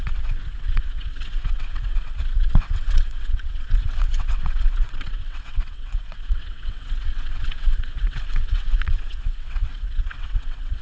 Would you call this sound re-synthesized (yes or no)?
yes